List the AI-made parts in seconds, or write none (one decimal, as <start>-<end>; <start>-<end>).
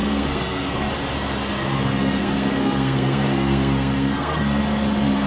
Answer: 0.0-0.9; 1.7-4.6